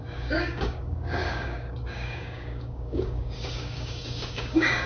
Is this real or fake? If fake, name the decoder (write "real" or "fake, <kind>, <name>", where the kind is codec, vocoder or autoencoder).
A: fake, codec, DAC